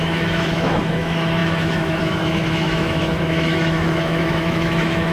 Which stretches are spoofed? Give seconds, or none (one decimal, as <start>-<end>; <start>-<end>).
0.0-5.1